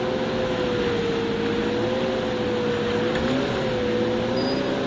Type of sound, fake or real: real